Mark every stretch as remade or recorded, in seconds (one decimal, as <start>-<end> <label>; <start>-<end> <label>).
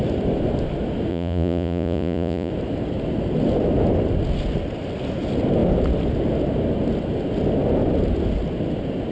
0.0-1.1 recorded; 1.1-2.5 remade; 2.5-9.1 recorded